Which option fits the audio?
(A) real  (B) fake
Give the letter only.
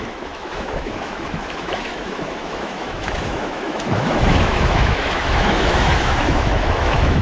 B